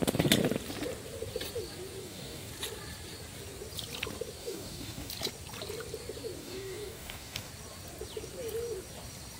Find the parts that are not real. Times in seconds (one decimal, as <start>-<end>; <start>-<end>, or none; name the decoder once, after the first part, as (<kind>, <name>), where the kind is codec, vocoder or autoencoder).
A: 2.0-2.5 (codec, DAC); 4.4-5.1; 6.4-7.5